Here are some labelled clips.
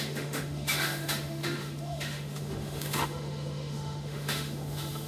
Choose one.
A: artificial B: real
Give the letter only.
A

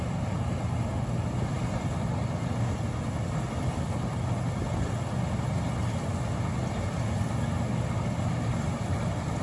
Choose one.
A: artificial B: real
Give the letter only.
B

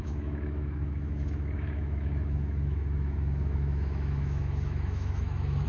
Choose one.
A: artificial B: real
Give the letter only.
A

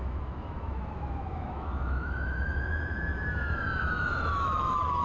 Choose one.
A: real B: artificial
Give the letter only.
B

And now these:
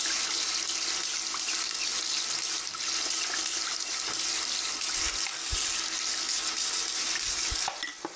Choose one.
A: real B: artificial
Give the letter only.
A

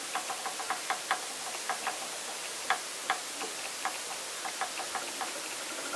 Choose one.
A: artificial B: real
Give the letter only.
B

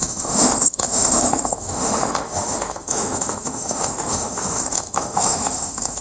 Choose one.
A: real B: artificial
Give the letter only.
B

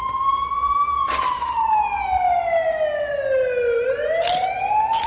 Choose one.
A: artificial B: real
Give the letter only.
B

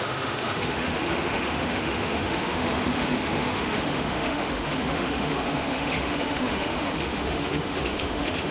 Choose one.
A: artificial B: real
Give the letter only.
A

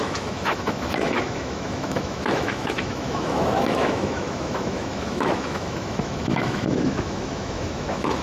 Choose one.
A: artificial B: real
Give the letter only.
A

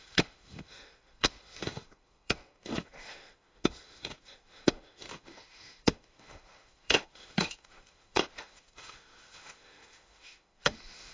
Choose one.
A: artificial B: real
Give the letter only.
A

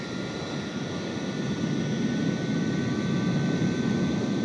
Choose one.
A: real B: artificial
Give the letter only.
A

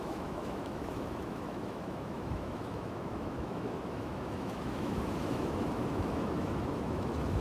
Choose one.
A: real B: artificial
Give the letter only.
B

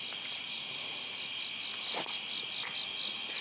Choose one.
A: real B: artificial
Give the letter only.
A